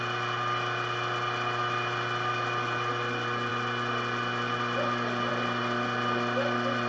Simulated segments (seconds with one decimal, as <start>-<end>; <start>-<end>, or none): none